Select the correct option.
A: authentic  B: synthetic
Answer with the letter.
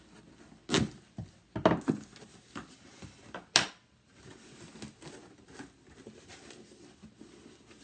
A